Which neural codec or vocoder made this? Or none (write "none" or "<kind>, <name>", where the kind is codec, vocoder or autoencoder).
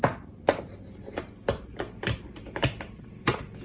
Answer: vocoder, BigVGAN v2